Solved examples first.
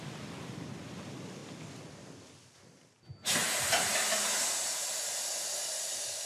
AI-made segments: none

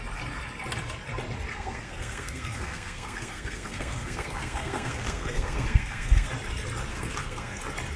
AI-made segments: 1.5-6.3; 6.9-7.6

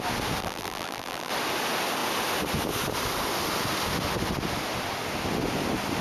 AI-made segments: 0.4-1.3

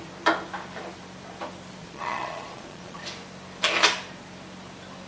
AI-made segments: 1.8-3.0

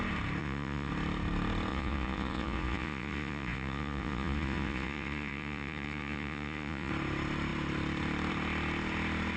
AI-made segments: 0.4-0.9; 1.7-6.9

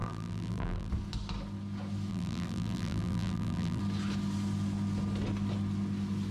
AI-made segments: 0.0-0.9; 2.1-3.8